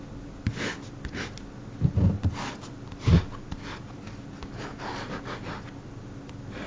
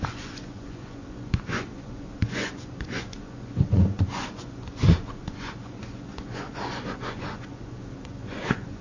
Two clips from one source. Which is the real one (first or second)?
first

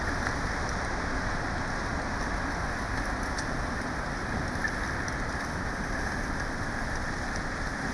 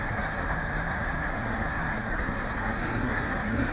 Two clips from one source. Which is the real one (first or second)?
first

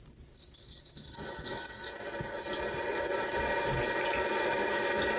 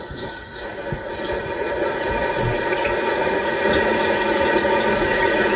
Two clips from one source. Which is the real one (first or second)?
first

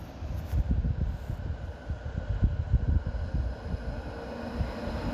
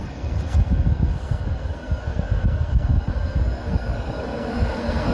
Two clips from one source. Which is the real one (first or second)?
first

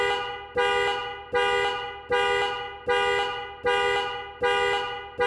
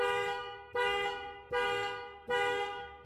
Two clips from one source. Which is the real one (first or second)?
first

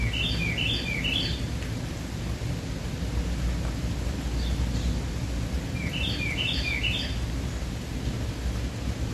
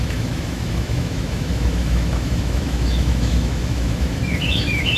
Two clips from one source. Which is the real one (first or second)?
first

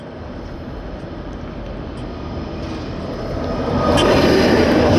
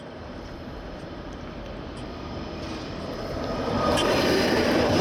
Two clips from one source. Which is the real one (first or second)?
first